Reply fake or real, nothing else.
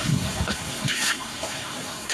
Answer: fake